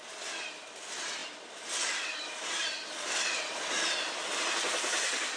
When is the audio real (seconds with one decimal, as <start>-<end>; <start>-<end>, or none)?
0.0-5.4